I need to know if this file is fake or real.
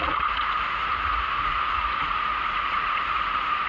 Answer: fake